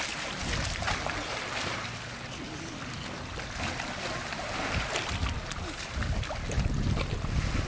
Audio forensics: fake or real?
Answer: real